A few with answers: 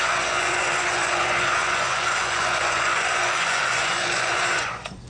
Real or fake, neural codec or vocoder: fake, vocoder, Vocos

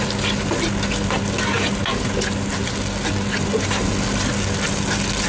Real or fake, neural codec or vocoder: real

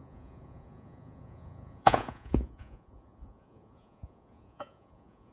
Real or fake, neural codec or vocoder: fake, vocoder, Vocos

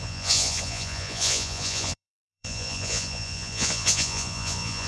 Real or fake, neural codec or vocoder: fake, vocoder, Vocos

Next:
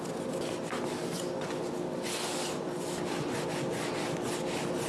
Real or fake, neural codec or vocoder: real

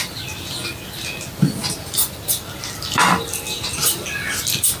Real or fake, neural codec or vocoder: real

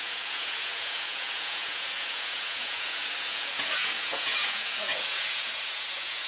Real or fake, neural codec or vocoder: fake, vocoder, Vocos